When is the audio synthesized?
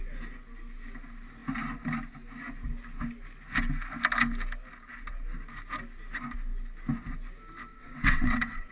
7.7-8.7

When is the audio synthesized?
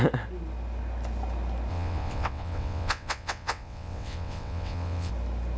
1.7-5.1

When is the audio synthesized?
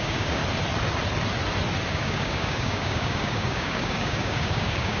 0.0-0.4; 1.9-5.0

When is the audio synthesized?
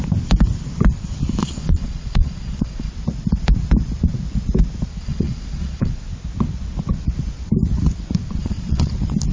1.4-2.9; 5.0-5.9; 8.4-8.9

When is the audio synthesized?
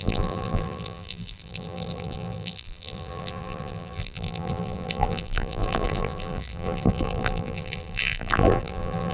0.0-9.1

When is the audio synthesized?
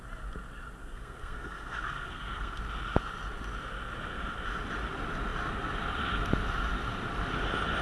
0.8-2.6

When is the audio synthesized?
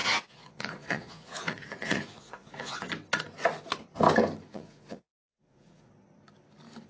0.0-2.9; 4.5-5.9